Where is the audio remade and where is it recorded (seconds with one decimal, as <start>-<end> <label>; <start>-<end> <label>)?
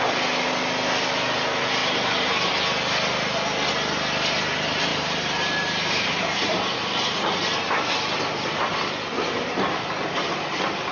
0.0-1.8 recorded; 1.8-2.4 remade; 2.4-4.9 recorded; 4.9-7.6 remade; 7.6-10.9 recorded